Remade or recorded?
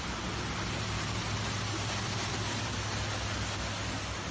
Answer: recorded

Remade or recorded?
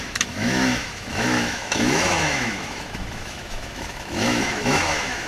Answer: remade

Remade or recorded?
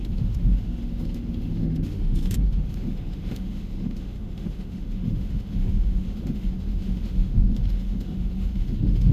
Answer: remade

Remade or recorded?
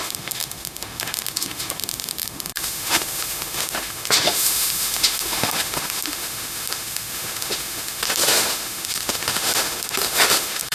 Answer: remade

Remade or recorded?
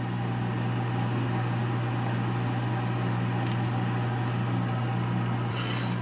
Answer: recorded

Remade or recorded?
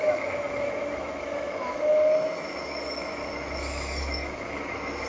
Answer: remade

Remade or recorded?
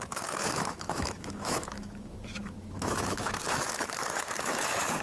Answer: remade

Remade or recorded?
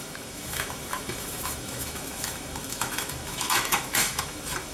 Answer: remade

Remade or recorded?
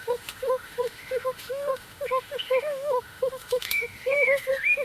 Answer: remade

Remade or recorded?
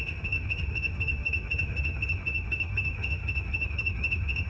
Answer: remade